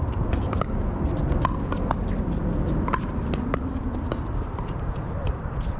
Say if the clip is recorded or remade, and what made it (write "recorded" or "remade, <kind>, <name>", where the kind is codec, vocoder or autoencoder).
recorded